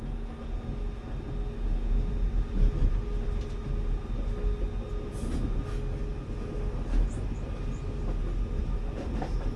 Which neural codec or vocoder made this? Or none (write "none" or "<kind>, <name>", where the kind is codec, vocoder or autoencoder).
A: none